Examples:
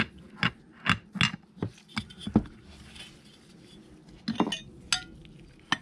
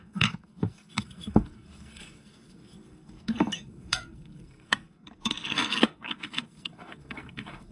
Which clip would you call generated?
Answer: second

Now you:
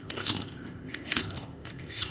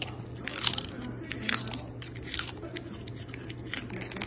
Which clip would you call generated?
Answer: first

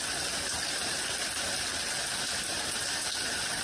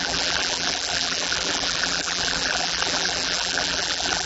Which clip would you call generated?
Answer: second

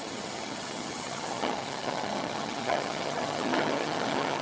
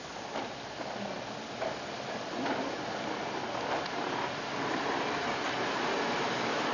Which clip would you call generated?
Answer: first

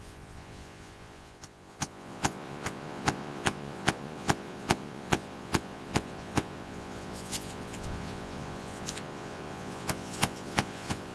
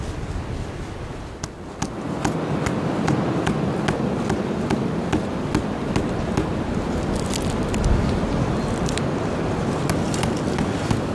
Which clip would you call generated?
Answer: first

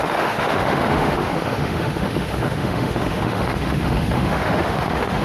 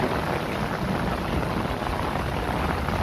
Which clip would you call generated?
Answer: first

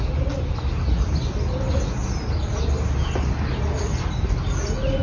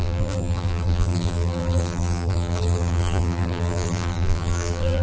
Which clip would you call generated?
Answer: second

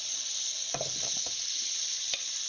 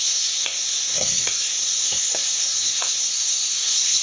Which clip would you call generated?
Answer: second